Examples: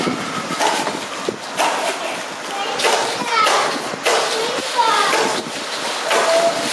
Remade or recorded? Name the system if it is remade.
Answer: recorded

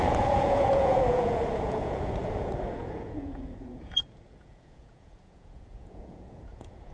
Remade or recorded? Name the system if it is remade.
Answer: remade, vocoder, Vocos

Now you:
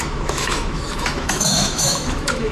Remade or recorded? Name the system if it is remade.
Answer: remade, autoencoder, DAC-VAE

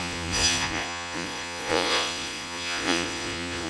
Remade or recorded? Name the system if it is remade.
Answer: remade, vocoder, Vocos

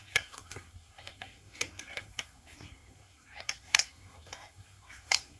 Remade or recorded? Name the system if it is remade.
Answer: remade, codec, SNAC